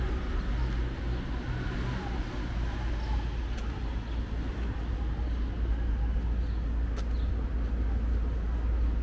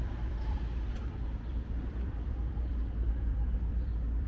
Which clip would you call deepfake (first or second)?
second